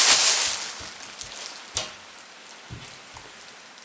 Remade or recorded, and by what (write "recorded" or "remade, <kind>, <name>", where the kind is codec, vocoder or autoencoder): recorded